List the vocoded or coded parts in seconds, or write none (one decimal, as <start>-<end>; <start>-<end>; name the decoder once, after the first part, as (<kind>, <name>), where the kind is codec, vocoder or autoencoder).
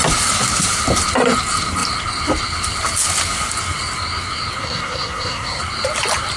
4.6-5.6 (codec, SNAC)